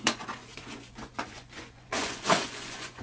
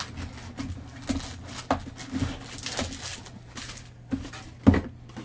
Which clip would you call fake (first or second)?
first